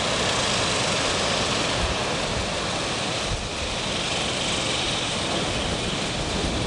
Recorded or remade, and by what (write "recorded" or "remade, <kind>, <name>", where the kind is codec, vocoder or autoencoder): recorded